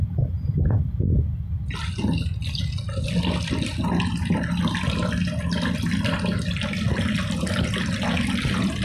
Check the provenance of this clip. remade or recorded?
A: recorded